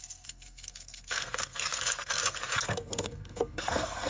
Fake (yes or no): yes